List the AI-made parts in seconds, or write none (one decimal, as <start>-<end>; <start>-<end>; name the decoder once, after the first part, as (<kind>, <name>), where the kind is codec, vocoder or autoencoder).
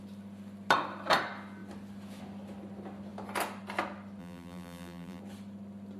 4.2-5.2 (vocoder, BigVGAN v2)